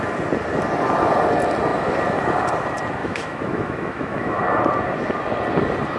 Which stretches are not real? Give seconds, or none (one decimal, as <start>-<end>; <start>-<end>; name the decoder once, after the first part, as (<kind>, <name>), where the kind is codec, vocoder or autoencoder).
3.0-4.4 (autoencoder, DAC-VAE)